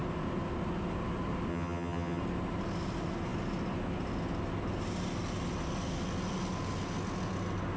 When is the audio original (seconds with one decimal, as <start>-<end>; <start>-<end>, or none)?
0.0-1.5; 2.2-7.8